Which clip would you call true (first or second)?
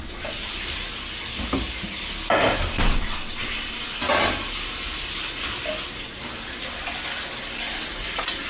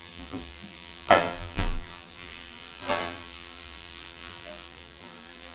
first